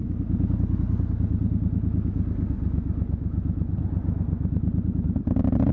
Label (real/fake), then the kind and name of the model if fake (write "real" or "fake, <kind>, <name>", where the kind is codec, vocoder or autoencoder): real